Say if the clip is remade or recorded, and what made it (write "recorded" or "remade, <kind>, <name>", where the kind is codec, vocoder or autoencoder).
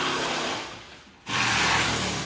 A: recorded